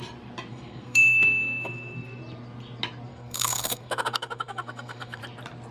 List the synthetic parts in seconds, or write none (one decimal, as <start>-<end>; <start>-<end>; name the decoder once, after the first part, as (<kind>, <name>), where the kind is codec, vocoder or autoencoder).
0.5-2.2 (codec, SNAC); 3.1-5.2